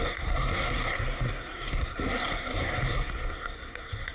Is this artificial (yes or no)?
yes